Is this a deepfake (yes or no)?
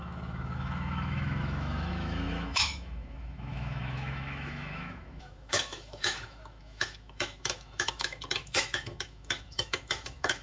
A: yes